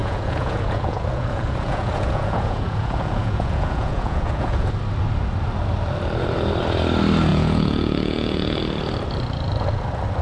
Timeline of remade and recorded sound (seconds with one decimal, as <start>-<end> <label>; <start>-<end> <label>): 0.0-4.7 remade; 4.7-7.3 recorded; 7.3-8.6 remade; 8.6-10.2 recorded